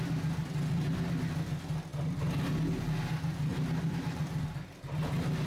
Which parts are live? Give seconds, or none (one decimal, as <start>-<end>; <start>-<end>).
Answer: 0.0-5.5